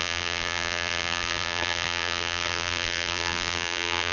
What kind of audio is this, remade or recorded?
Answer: remade